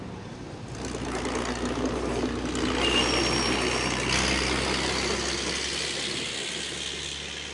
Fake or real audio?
real